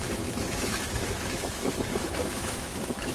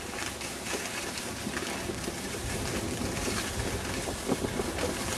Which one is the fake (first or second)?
first